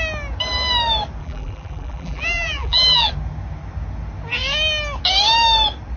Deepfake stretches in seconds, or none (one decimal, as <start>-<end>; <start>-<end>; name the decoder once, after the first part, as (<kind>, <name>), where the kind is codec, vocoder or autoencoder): 1.2-3.1 (vocoder, BigVGAN v2)